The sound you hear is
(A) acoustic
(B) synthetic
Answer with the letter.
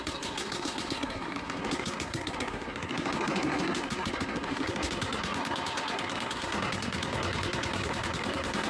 B